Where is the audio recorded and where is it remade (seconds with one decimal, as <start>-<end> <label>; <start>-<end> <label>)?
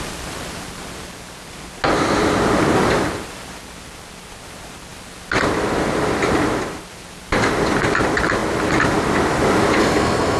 0.0-9.8 recorded; 9.8-10.4 remade